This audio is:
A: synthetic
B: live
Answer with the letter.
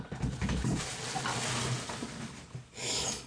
B